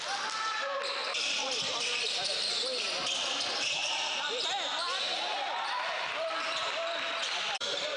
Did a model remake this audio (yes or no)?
yes